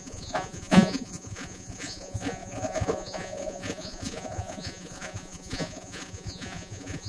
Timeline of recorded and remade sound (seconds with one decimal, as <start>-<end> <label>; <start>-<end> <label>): 0.0-7.1 remade